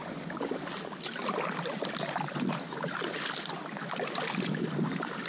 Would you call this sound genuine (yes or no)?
yes